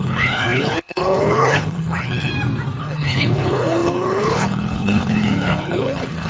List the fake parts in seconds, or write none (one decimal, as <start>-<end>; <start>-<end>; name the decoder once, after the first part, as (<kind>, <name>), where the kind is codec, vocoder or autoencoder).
0.0-2.3 (codec, HILCodec); 2.8-6.3